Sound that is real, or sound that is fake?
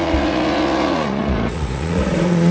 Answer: fake